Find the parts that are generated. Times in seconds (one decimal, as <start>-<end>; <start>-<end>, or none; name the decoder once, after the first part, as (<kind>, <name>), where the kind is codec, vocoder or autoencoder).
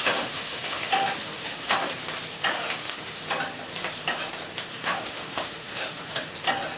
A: 0.0-1.9 (autoencoder, DAC-VAE); 2.5-3.2; 4.7-6.3